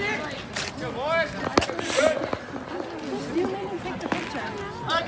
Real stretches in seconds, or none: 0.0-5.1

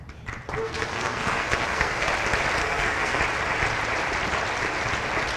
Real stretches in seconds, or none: 0.0-0.6; 2.1-2.6; 3.2-5.4

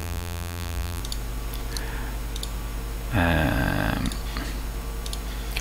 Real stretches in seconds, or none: 1.0-5.6

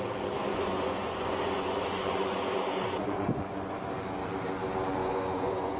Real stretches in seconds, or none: 0.0-0.5; 3.8-5.0

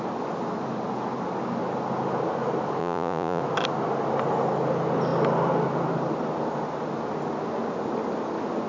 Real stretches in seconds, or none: 0.0-2.8; 3.4-8.7

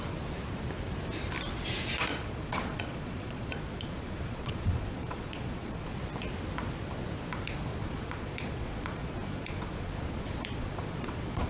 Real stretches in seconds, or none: 0.0-2.1; 5.9-7.7

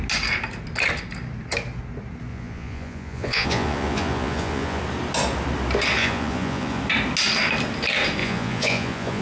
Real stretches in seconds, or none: 0.0-2.3; 4.8-6.0; 6.8-8.2

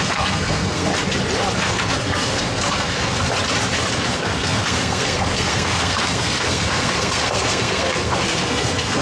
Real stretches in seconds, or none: 0.9-1.6; 3.3-3.9